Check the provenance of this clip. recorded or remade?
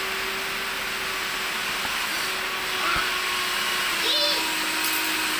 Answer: recorded